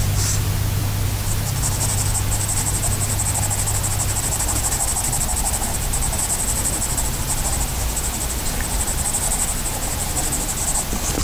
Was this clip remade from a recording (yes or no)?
no